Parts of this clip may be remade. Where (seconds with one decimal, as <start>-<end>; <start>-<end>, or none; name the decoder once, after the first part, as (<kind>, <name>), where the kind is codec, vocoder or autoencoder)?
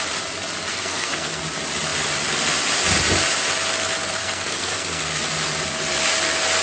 0.7-1.4 (codec, SNAC); 4.2-5.2